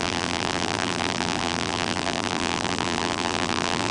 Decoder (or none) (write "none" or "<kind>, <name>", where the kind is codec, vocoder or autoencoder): vocoder, BigVGAN v2